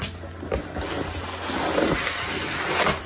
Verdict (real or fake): real